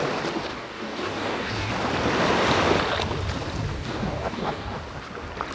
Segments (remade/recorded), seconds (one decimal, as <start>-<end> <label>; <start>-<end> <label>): 0.0-0.5 recorded; 0.5-1.7 remade; 1.7-3.7 recorded; 3.7-4.8 remade; 4.8-5.5 recorded